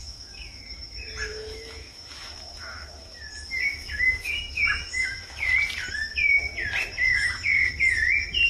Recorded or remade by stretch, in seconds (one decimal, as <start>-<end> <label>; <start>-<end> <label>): 0.0-0.6 remade; 0.6-1.3 recorded; 1.3-3.2 remade; 3.2-3.7 recorded; 3.7-5.4 remade; 5.4-7.1 recorded; 7.1-7.7 remade; 7.7-8.5 recorded